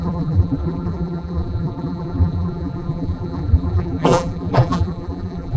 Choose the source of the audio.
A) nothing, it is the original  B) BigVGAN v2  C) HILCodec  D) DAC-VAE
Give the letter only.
B